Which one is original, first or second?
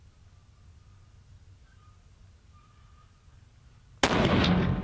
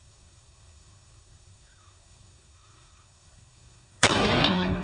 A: first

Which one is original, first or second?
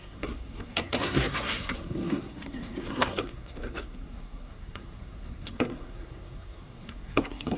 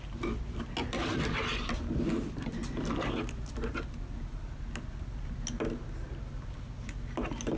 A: second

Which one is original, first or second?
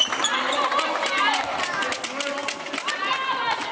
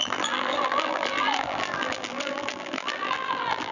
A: first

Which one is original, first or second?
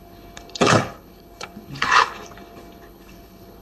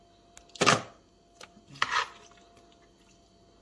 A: second